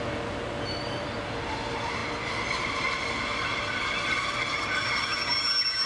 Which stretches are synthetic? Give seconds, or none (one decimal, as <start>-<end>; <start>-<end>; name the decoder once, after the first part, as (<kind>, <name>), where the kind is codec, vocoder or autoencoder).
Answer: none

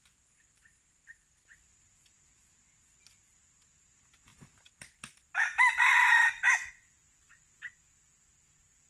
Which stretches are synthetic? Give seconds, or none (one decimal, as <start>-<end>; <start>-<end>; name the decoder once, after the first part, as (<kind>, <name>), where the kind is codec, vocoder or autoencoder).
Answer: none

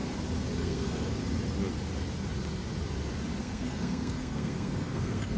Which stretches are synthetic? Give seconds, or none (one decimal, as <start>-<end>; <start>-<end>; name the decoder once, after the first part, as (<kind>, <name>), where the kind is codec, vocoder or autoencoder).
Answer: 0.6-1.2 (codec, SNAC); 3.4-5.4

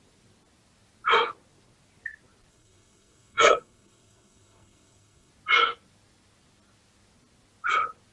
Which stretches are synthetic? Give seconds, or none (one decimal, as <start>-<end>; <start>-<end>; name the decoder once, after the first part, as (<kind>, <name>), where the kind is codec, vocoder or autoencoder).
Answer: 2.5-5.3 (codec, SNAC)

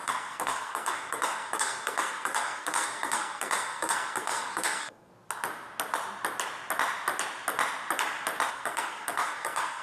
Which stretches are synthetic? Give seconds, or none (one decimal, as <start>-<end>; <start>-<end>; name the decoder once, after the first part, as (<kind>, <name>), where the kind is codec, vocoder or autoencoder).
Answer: 0.0-5.1 (codec, SNAC); 8.5-9.8